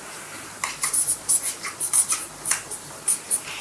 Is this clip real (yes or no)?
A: no